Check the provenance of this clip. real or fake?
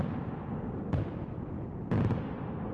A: real